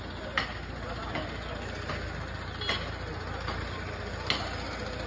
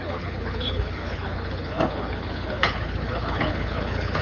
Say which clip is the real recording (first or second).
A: first